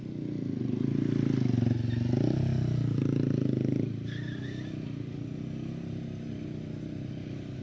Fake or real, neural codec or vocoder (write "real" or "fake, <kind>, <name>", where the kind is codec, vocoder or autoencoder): real